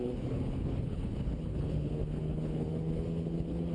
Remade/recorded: remade